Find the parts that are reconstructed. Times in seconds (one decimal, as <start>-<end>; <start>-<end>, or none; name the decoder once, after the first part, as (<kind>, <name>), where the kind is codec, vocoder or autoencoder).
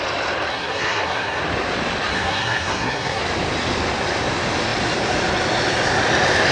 0.5-1.4 (codec, SNAC); 2.1-3.2